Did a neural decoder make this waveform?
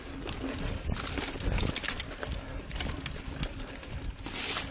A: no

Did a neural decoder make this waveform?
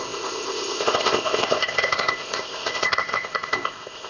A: yes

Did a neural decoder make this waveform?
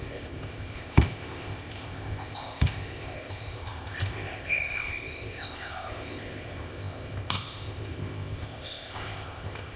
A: yes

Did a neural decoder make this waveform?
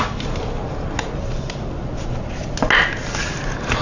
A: no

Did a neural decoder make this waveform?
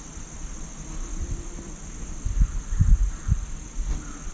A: no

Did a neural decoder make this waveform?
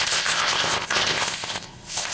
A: yes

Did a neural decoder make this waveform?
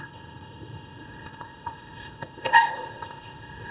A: yes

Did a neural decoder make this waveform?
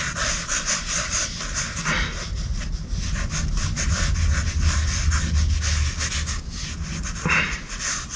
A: no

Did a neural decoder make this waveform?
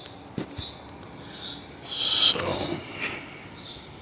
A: no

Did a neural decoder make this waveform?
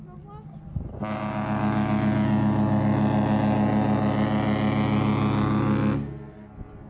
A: no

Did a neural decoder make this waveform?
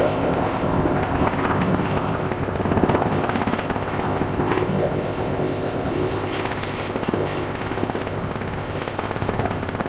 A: yes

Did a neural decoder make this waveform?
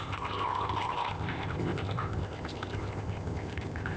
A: yes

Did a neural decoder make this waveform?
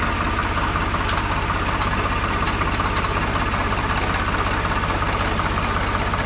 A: no